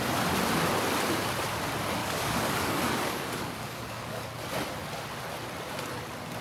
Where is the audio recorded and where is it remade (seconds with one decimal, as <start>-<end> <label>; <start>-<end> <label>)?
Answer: 0.0-2.0 recorded; 2.0-4.3 remade; 4.3-6.4 recorded